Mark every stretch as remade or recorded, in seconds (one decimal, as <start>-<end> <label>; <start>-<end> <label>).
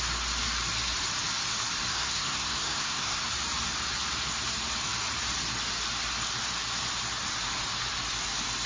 0.0-1.9 recorded; 1.9-3.3 remade; 3.3-8.7 recorded